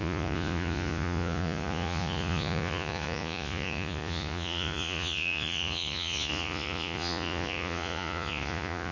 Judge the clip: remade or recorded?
remade